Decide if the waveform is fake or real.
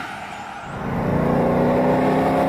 real